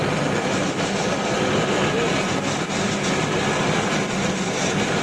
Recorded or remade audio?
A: recorded